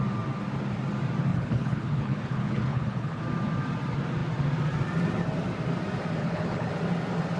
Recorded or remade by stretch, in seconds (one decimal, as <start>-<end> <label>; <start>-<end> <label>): 0.0-1.3 recorded; 1.3-3.2 remade; 3.2-6.2 recorded; 6.2-6.7 remade; 6.7-7.4 recorded